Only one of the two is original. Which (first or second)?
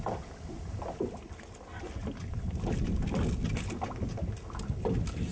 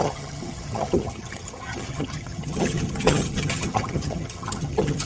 first